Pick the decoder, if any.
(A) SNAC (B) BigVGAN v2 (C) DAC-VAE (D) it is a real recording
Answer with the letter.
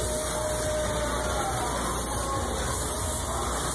D